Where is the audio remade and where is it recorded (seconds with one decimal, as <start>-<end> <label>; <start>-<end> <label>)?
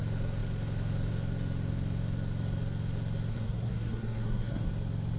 0.0-3.3 recorded; 3.3-4.7 remade; 4.7-5.2 recorded